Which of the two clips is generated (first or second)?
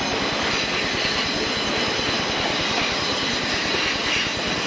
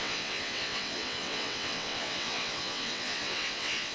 second